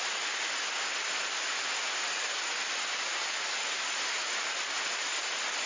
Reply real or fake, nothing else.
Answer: real